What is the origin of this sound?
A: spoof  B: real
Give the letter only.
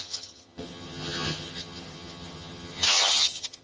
A